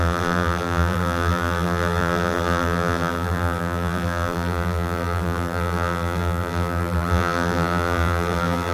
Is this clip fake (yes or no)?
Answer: yes